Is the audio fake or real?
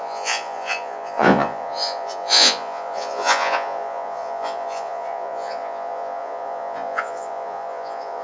fake